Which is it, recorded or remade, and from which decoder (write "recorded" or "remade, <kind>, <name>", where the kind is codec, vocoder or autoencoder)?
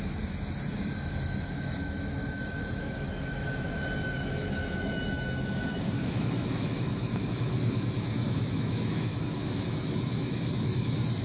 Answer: remade, autoencoder, DAC-VAE